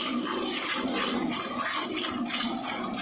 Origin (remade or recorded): recorded